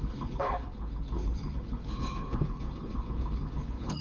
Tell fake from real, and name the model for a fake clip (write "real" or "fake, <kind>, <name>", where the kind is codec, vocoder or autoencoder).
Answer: fake, codec, HILCodec